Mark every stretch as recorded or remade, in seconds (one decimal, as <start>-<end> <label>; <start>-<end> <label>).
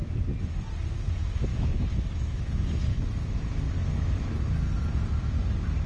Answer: 0.0-1.5 recorded; 1.5-2.5 remade; 2.5-2.9 recorded; 2.9-3.4 remade; 3.4-3.8 recorded; 3.8-4.3 remade; 4.3-5.9 recorded